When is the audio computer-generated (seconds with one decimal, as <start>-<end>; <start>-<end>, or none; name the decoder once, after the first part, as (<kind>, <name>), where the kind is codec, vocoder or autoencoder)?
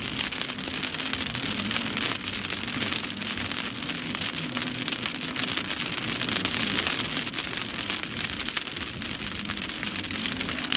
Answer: 10.2-10.8 (codec, SNAC)